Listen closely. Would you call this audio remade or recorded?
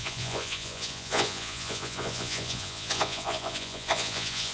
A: remade